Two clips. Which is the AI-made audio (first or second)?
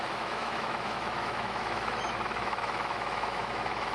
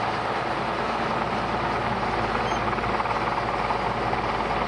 first